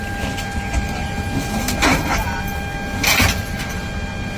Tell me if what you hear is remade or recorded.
recorded